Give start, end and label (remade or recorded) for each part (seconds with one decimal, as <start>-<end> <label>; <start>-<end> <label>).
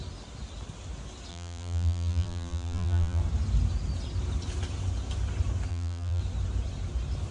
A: 0.0-1.3 recorded; 1.3-3.2 remade; 3.2-5.7 recorded; 5.7-6.2 remade; 6.2-7.3 recorded